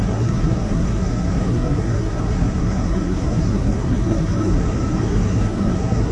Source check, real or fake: fake